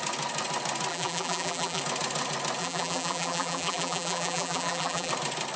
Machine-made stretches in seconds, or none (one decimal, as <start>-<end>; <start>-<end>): 0.9-1.8; 2.6-5.1